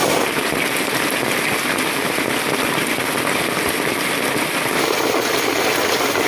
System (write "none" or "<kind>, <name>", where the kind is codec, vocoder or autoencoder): none